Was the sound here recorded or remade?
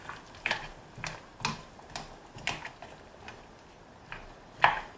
recorded